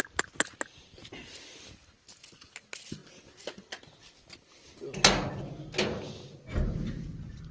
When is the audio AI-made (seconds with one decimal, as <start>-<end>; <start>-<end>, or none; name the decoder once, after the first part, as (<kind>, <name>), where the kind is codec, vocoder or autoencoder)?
none